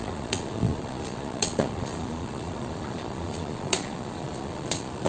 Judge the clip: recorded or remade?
remade